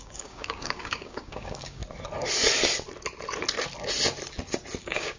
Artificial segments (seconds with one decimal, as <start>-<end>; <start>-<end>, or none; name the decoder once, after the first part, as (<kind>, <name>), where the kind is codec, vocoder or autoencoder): 0.0-1.8 (codec, DAC); 4.8-5.2